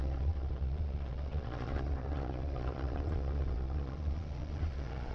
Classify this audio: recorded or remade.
remade